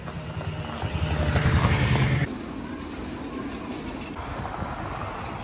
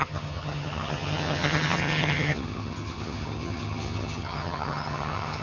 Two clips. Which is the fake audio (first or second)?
second